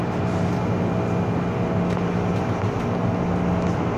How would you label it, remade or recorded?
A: recorded